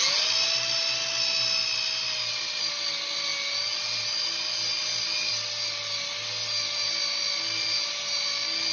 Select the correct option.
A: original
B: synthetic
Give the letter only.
A